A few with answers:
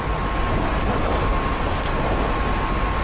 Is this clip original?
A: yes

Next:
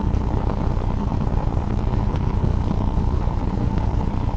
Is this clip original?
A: no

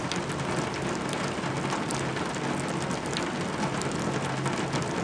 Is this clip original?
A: yes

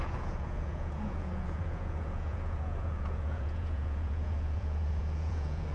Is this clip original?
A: no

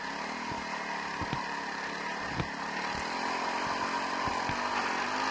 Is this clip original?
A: yes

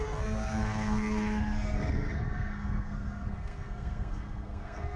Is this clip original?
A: no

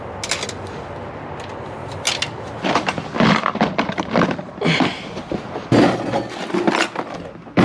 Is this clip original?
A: yes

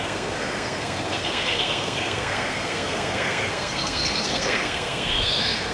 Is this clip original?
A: no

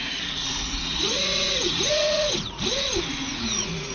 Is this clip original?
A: no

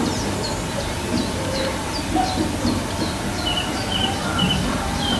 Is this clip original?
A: yes